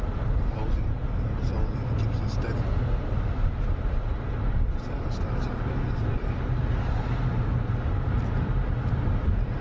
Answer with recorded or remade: recorded